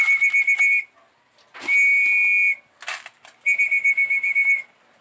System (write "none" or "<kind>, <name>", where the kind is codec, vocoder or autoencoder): none